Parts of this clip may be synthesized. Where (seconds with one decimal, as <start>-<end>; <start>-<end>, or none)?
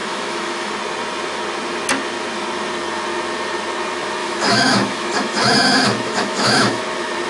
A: 0.0-0.7; 4.2-6.8